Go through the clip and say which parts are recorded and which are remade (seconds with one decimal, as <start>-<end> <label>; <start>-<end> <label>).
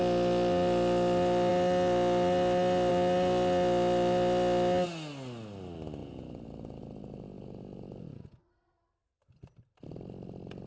0.0-6.0 recorded; 6.0-8.4 remade; 8.4-10.7 recorded